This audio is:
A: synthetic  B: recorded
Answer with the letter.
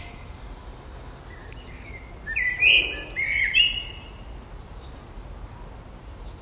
B